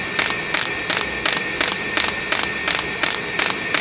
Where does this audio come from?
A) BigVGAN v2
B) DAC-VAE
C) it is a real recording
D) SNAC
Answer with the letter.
C